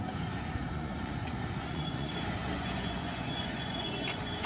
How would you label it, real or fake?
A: fake